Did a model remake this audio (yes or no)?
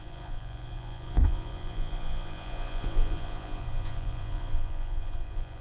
yes